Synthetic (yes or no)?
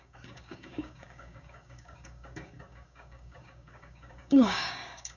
yes